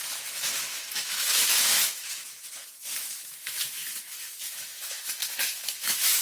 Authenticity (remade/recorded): remade